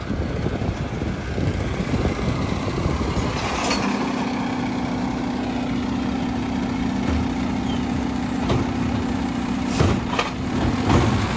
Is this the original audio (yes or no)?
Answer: yes